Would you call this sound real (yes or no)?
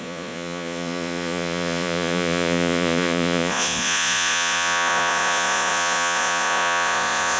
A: no